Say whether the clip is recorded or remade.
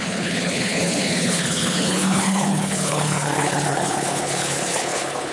remade